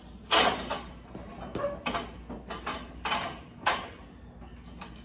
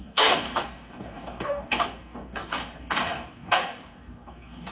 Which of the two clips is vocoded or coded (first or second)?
second